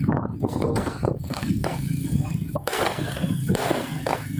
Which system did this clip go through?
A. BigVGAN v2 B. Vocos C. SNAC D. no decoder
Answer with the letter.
C